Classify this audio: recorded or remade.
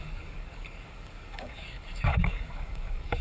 remade